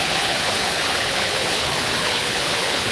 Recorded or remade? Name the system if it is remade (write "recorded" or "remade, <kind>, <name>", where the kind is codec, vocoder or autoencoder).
remade, codec, HILCodec